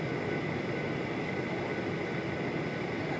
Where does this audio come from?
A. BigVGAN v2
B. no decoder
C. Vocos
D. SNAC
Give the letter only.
B